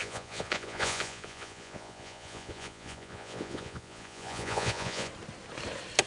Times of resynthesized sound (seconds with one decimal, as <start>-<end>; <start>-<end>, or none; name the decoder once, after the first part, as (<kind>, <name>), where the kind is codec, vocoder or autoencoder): 0.0-5.1 (vocoder, Vocos)